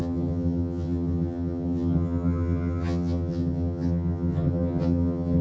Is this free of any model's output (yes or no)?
no